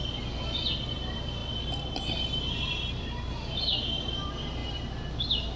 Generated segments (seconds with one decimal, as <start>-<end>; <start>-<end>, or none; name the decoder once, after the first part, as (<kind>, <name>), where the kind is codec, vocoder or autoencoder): 4.6-5.6 (vocoder, BigVGAN v2)